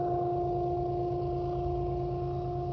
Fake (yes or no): no